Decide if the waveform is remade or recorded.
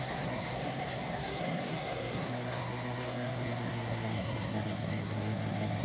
remade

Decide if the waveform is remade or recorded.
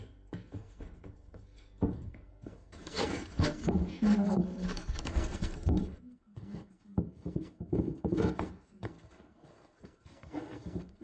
remade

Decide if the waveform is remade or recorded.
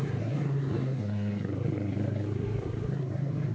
remade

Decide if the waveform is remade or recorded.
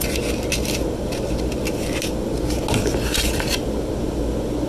recorded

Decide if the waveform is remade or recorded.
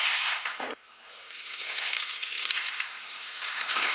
remade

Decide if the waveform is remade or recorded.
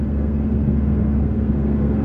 remade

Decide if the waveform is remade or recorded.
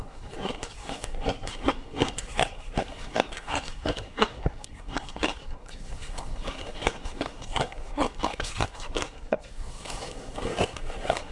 remade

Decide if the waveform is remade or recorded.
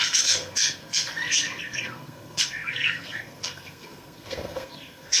remade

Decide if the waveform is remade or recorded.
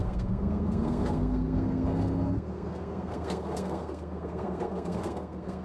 remade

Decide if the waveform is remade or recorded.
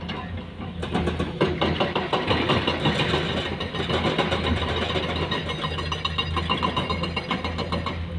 recorded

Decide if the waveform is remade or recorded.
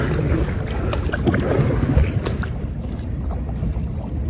recorded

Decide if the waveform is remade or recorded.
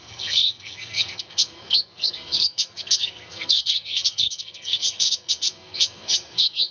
remade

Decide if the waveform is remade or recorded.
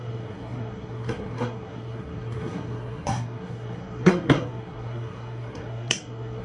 remade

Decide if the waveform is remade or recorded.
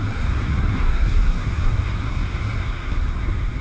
remade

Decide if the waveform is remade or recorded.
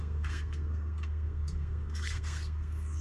remade